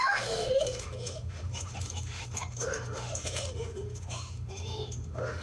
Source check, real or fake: fake